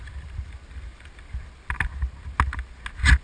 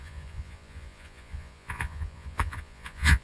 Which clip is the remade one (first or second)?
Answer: second